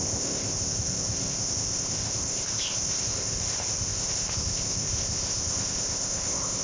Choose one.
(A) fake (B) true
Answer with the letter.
A